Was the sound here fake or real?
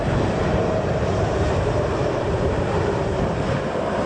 fake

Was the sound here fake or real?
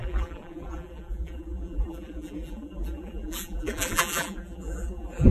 fake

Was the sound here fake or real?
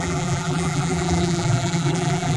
fake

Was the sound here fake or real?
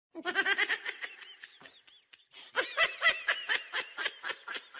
real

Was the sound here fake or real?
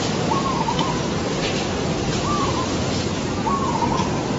fake